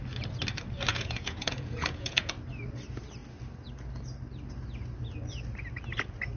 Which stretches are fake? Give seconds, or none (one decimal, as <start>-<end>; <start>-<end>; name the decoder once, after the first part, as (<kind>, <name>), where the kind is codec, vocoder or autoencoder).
0.9-2.3 (vocoder, Vocos)